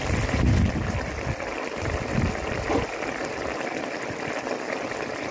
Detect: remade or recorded recorded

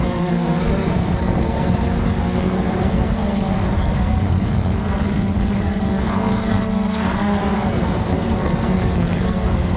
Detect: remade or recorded remade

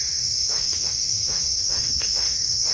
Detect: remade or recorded remade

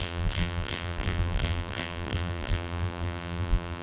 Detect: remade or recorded remade